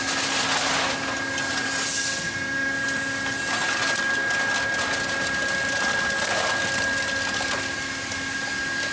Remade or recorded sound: recorded